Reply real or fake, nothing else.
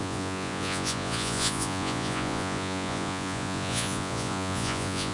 fake